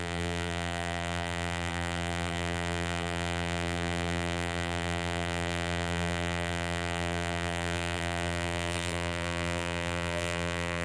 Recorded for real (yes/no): no